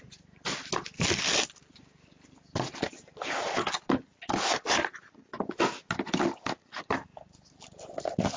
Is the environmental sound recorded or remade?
recorded